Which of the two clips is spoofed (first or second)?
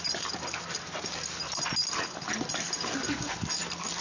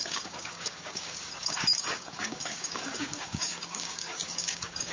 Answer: second